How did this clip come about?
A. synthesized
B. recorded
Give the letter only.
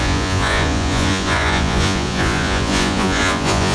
A